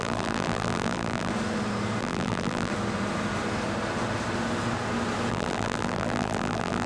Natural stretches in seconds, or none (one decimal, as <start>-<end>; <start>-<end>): 1.3-2.0; 2.7-5.3

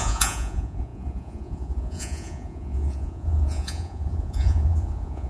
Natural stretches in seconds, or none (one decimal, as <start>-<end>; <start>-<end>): none